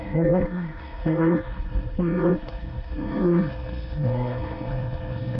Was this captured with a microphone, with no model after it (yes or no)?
no